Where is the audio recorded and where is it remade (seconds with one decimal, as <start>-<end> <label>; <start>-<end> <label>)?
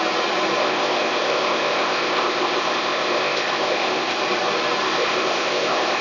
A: 0.0-0.6 recorded; 0.6-4.2 remade; 4.2-4.8 recorded; 4.8-6.0 remade